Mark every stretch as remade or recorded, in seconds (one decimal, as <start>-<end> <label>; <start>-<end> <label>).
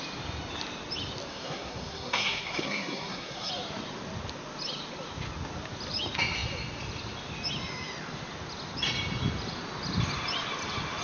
0.0-1.3 recorded; 1.3-3.5 remade; 3.5-11.0 recorded